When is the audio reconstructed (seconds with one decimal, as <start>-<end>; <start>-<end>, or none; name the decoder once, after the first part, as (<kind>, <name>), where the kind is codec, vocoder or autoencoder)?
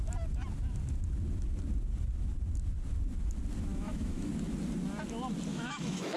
3.7-4.3 (autoencoder, DAC-VAE); 5.5-6.2